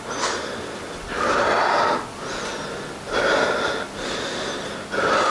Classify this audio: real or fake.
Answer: real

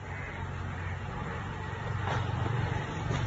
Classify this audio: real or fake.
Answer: fake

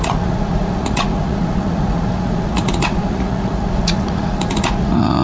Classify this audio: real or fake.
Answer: fake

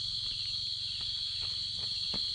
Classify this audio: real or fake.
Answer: real